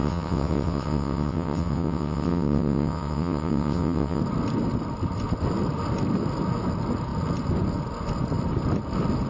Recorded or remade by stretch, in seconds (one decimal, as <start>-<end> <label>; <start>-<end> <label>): 0.0-4.2 remade; 4.2-9.3 recorded